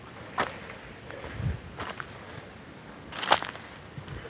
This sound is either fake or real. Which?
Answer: real